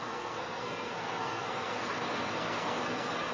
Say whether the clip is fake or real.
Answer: fake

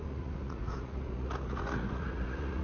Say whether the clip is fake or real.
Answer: fake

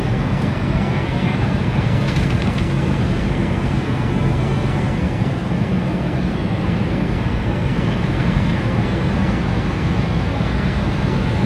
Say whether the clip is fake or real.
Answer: fake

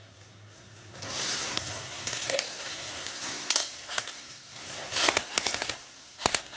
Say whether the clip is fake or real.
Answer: fake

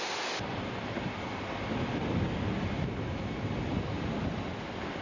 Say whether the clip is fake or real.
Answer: real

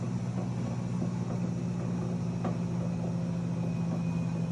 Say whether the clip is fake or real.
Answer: real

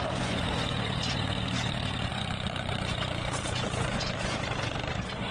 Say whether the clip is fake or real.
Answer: fake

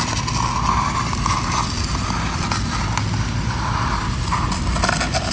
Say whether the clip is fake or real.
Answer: real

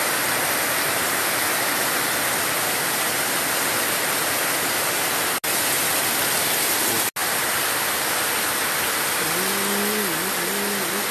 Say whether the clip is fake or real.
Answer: real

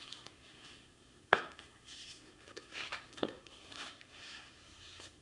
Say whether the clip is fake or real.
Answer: fake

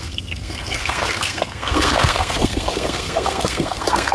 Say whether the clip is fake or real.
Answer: fake